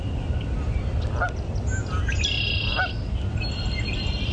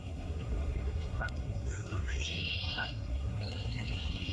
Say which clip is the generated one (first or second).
second